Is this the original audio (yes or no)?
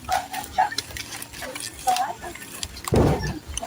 no